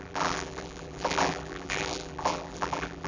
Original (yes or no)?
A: no